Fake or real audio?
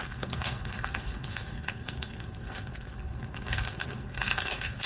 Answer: fake